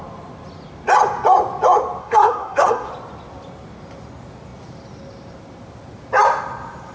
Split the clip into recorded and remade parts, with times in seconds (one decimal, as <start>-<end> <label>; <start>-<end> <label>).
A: 0.0-2.0 recorded; 2.0-2.9 remade; 2.9-6.9 recorded